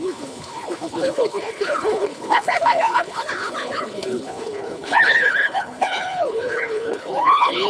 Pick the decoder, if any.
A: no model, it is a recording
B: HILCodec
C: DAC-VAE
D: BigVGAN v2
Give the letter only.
B